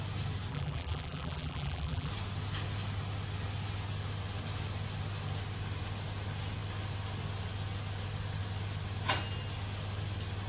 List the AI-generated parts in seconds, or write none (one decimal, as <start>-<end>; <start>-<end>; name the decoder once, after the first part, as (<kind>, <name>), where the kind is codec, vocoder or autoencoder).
0.5-2.1 (vocoder, BigVGAN v2)